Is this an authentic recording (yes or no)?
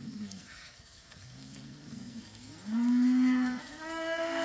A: no